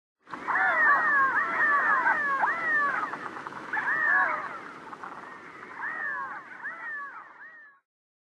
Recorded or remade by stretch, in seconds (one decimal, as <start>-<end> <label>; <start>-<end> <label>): 0.0-1.4 recorded; 1.4-3.8 remade; 3.8-8.3 recorded